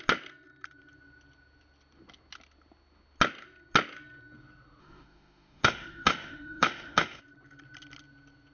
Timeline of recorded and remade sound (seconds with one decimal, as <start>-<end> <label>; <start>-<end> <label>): 0.0-4.8 recorded; 4.8-7.2 remade; 7.2-8.5 recorded